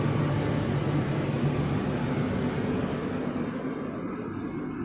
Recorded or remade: recorded